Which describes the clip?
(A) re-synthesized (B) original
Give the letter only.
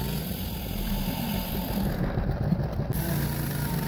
B